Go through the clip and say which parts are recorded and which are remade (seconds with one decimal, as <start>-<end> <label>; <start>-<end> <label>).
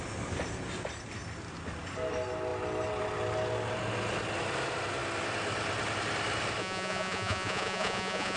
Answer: 0.0-6.6 recorded; 6.6-8.4 remade